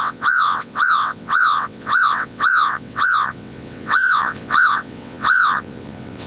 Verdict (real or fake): fake